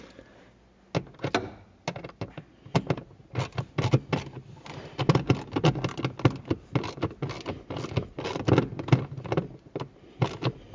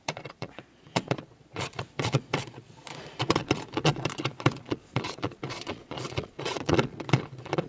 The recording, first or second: first